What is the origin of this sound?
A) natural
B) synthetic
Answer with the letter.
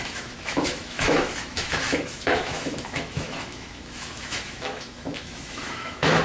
B